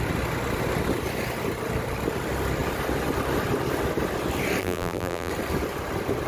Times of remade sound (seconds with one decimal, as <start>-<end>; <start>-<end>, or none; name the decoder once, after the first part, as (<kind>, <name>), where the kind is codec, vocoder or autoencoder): 4.6-5.3 (vocoder, BigVGAN v2)